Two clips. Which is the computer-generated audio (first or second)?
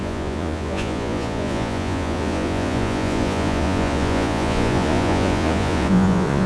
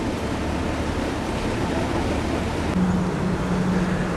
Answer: first